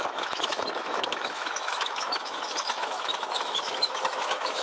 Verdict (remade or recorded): remade